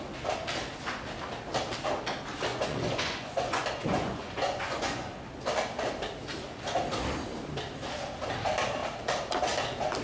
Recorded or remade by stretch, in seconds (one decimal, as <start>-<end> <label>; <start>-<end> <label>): 0.0-2.5 recorded; 2.5-5.1 remade; 5.1-10.0 recorded